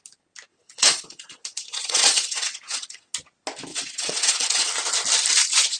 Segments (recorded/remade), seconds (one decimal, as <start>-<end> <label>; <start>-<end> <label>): 0.0-0.5 recorded; 0.5-3.1 remade; 3.1-3.7 recorded; 3.7-4.7 remade; 4.7-5.8 recorded